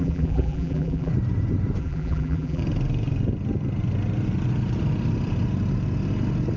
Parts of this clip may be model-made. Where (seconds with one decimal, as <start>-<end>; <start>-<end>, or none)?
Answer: 0.0-1.1; 1.8-2.6